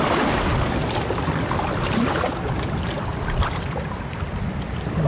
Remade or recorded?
recorded